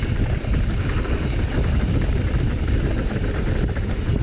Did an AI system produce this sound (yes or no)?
no